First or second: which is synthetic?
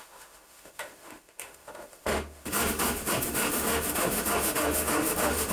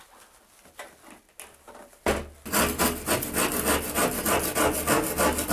first